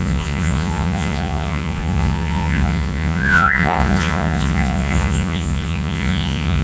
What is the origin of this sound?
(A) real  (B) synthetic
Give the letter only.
B